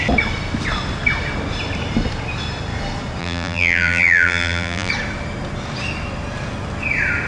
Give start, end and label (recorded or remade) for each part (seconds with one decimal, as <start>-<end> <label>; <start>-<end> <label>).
0.0-3.2 recorded; 3.2-4.9 remade; 4.9-7.3 recorded